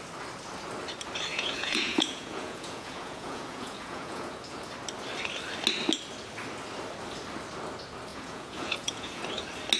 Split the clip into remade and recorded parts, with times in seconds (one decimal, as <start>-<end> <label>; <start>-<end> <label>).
0.0-1.3 recorded; 1.3-4.6 remade; 4.6-8.1 recorded; 8.1-9.2 remade; 9.2-9.8 recorded